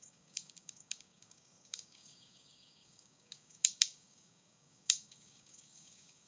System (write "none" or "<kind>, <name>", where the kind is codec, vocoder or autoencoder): codec, DAC